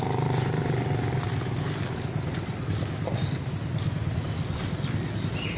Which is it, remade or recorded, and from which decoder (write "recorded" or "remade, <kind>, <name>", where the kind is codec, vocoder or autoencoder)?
recorded